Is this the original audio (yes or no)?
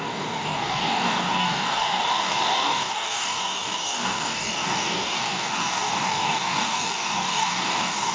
no